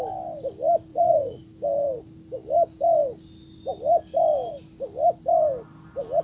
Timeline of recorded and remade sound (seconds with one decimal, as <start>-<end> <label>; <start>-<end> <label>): 0.0-0.9 recorded; 0.9-1.4 remade; 1.4-6.2 recorded